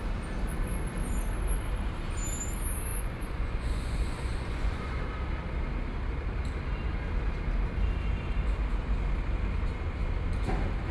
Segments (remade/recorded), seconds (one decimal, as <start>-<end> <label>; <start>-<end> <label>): 0.0-2.9 recorded; 2.9-5.0 remade; 5.0-10.9 recorded